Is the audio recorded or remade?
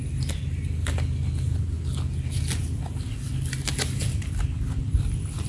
recorded